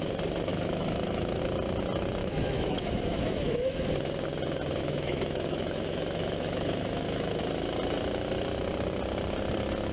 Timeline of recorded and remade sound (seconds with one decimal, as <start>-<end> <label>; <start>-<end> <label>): 0.0-0.5 recorded; 0.5-1.4 remade; 1.4-2.2 recorded; 2.2-3.9 remade; 3.9-4.8 recorded; 4.8-7.4 remade; 7.4-9.9 recorded